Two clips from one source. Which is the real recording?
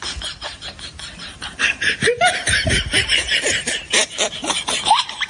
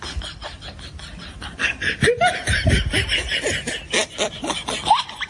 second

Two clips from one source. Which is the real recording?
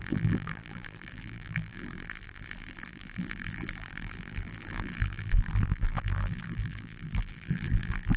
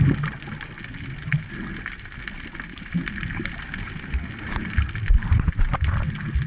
second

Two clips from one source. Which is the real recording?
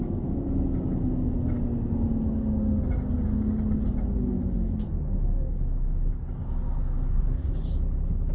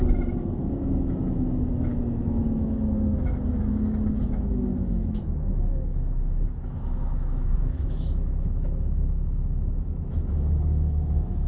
first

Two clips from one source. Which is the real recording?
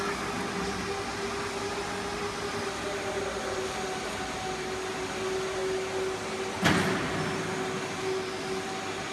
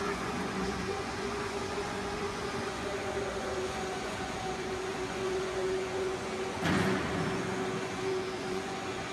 first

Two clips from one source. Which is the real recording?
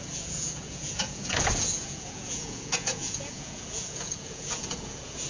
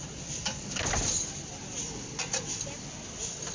second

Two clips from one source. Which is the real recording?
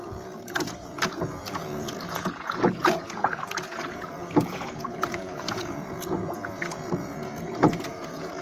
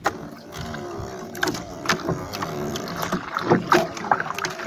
second